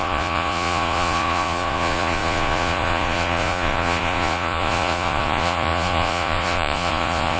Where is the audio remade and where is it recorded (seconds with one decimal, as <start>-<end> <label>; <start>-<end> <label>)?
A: 0.0-7.4 remade

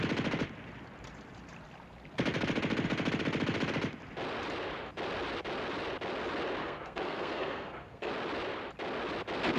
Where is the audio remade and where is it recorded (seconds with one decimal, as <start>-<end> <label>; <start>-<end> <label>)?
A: 0.0-6.6 recorded; 6.6-8.1 remade; 8.1-9.6 recorded

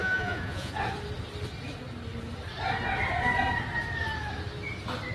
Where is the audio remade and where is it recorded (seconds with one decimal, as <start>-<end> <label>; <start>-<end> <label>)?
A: 0.0-0.7 remade; 0.7-5.1 recorded

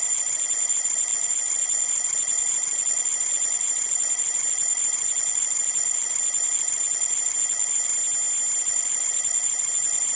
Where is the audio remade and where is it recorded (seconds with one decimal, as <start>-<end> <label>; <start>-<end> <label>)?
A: 0.0-7.9 remade; 7.9-8.6 recorded; 8.6-10.1 remade